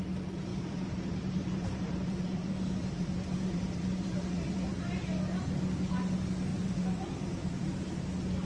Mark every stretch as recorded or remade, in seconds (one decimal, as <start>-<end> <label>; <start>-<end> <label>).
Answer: 0.0-0.5 recorded; 0.5-4.8 remade; 4.8-6.5 recorded; 6.5-7.8 remade; 7.8-8.5 recorded